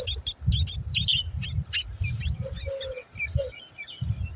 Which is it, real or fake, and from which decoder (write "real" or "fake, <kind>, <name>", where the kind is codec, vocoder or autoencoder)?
real